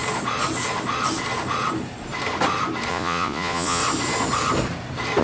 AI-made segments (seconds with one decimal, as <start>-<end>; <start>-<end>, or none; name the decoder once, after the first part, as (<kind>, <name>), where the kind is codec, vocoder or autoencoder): 2.9-3.8 (vocoder, Vocos)